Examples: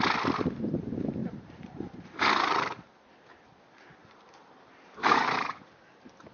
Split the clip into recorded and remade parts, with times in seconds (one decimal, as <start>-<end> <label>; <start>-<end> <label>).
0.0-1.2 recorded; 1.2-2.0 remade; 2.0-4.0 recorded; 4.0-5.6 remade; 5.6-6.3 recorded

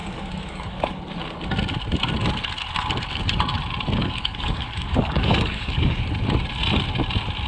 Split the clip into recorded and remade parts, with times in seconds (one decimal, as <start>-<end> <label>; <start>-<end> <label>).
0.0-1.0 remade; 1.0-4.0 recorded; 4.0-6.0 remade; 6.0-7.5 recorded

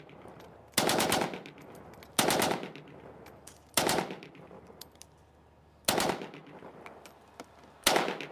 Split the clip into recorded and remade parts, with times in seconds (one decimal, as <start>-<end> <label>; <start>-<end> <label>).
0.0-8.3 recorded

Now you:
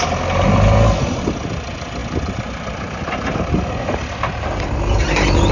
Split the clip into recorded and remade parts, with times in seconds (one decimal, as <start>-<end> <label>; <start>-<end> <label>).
0.0-5.5 recorded